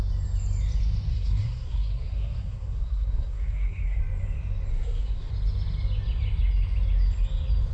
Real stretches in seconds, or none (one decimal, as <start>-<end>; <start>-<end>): 0.0-1.1; 4.0-4.7; 5.3-7.7

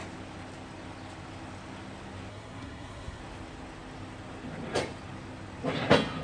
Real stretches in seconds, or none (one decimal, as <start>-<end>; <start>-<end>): 0.0-2.3; 3.2-6.2

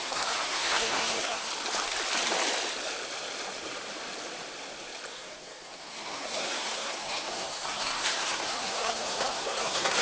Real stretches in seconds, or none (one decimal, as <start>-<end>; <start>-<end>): 1.5-5.1

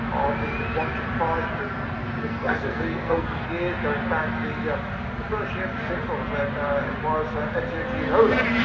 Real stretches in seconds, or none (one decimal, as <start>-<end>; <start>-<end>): 0.0-2.2; 3.4-8.6

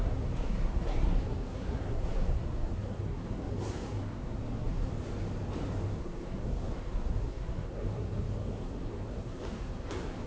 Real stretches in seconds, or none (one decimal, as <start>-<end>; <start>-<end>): 4.9-6.0